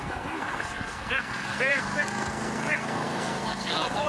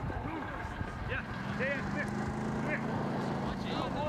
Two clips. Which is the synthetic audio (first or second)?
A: first